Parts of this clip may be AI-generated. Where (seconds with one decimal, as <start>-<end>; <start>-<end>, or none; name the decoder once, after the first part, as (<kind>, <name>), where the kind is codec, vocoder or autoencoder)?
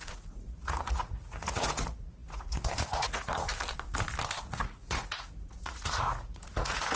0.0-3.5 (vocoder, Vocos); 4.4-7.0